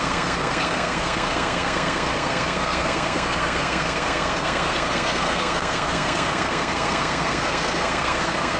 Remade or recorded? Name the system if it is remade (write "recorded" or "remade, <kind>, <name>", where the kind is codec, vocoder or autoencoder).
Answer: remade, codec, SNAC